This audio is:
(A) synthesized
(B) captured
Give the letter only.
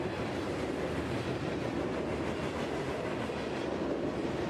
B